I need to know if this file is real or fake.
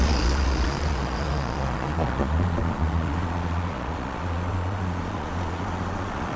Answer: fake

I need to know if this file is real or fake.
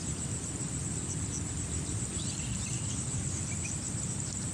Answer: real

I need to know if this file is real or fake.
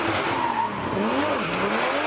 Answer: real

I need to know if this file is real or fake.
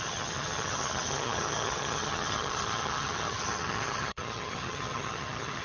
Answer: fake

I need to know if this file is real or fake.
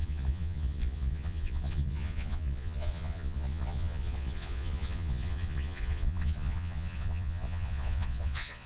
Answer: fake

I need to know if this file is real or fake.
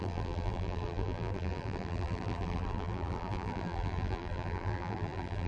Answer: fake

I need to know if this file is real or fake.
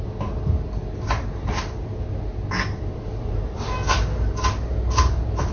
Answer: real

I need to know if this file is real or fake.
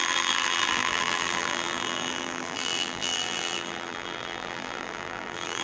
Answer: fake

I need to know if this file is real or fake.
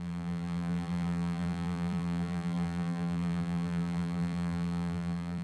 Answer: fake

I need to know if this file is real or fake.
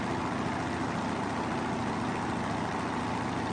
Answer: real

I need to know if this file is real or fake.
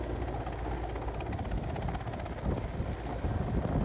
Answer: real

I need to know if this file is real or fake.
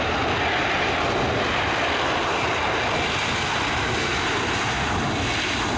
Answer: real